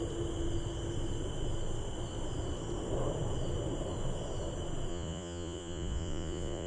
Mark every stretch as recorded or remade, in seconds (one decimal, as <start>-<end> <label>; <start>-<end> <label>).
0.0-4.9 recorded; 4.9-6.7 remade